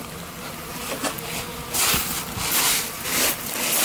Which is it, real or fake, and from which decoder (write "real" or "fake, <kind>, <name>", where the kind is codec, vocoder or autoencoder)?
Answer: real